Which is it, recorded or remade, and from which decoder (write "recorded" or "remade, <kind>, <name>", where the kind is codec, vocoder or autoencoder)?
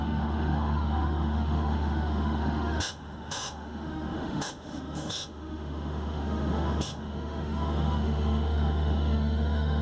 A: remade, autoencoder, DAC-VAE